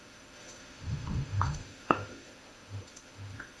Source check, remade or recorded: remade